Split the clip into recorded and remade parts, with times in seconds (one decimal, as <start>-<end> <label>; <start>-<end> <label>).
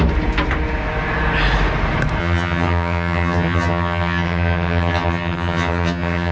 0.0-2.2 recorded; 2.2-6.3 remade